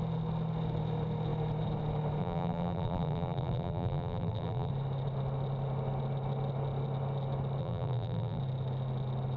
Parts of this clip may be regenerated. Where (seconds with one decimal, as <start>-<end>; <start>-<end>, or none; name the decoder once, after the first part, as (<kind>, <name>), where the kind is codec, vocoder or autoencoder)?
2.2-4.7 (vocoder, BigVGAN v2); 7.6-8.4